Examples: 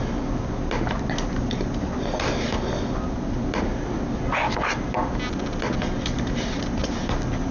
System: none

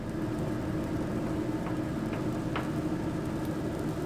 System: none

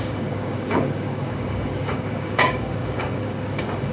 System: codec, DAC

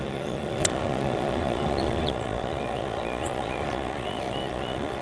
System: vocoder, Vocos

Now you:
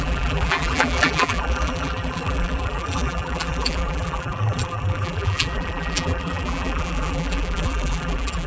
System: vocoder, BigVGAN v2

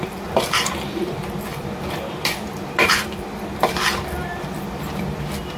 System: vocoder, BigVGAN v2